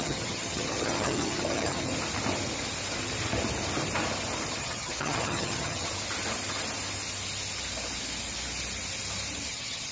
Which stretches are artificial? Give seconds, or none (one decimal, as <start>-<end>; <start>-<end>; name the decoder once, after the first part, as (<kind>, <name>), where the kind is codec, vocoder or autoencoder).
0.0-1.9 (vocoder, HiFi-GAN); 4.6-5.9; 9.5-9.9

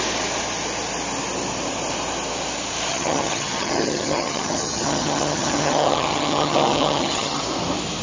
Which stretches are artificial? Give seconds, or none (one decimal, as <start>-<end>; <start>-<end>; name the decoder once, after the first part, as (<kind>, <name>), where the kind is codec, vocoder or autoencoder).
2.9-7.4 (vocoder, HiFi-GAN)

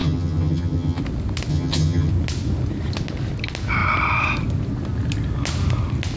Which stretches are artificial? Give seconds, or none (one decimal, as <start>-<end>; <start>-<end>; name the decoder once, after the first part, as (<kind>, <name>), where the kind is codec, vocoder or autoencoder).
0.0-1.0 (vocoder, HiFi-GAN); 1.5-2.1

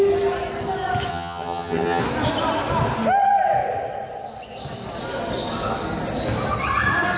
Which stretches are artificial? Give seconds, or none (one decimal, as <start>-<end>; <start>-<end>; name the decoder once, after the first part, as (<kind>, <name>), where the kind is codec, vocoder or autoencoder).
1.1-2.0 (vocoder, HiFi-GAN)

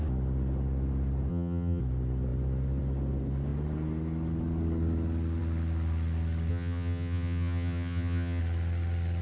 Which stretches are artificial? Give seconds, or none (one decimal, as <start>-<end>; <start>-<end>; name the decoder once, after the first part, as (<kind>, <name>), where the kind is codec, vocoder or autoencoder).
1.3-1.8 (vocoder, HiFi-GAN); 6.5-8.4

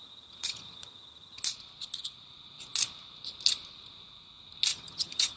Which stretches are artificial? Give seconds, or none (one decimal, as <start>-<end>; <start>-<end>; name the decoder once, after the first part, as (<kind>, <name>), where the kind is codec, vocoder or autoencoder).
0.0-1.4 (vocoder, HiFi-GAN); 4.7-5.4

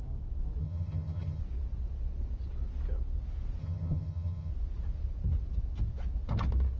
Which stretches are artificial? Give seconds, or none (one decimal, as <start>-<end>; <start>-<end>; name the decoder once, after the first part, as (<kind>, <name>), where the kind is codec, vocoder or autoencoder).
0.6-1.4 (vocoder, HiFi-GAN); 3.6-4.5